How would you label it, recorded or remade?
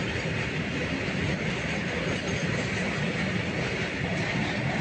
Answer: recorded